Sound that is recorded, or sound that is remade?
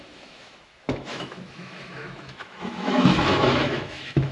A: remade